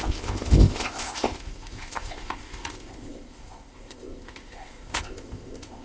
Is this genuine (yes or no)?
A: no